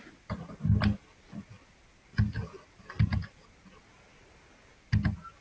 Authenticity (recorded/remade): recorded